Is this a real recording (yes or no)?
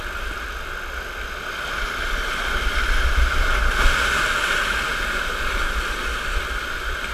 yes